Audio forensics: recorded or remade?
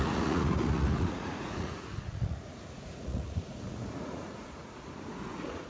remade